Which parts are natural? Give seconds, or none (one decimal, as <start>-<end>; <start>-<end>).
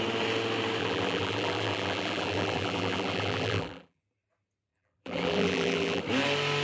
0.0-0.8; 4.0-4.7; 6.0-6.6